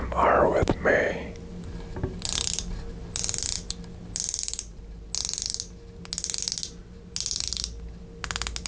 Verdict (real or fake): real